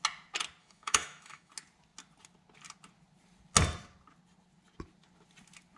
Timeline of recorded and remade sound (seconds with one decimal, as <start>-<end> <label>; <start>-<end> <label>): 0.0-0.6 recorded; 0.6-1.5 remade; 1.5-5.8 recorded